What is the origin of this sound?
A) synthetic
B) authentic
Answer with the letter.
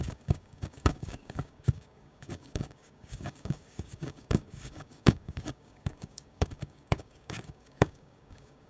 A